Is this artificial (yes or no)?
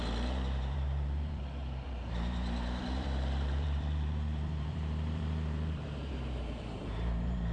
yes